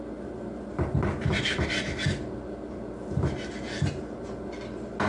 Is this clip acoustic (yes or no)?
yes